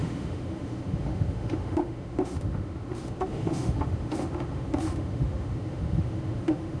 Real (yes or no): no